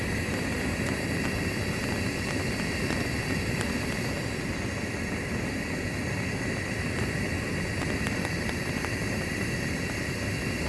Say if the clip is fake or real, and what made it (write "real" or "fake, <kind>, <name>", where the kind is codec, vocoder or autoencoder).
real